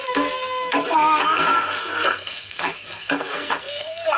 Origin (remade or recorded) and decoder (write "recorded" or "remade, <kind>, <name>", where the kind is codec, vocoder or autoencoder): remade, codec, SNAC